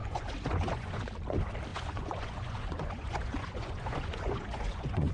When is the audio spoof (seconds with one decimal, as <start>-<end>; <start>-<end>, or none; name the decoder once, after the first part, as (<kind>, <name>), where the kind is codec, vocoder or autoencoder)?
0.0-1.0 (vocoder, Vocos); 1.7-5.1